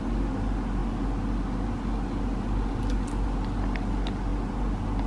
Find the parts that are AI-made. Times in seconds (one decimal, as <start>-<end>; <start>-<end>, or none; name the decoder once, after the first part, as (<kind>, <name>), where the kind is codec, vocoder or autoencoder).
none